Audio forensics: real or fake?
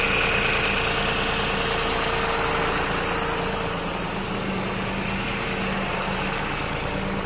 real